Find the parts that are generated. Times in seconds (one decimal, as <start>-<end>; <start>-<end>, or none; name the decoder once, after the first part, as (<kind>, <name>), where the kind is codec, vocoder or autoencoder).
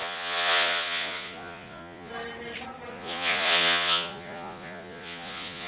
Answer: 0.0-2.1 (vocoder, Vocos); 2.9-5.7